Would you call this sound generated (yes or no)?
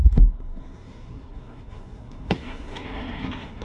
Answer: yes